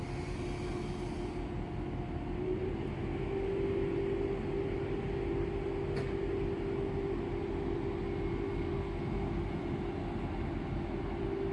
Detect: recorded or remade recorded